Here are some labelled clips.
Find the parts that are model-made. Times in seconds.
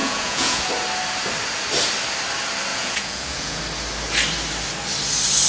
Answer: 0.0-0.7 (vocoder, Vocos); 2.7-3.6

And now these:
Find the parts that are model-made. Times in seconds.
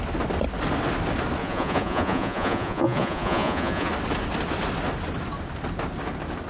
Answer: 1.4-3.9 (vocoder, Vocos)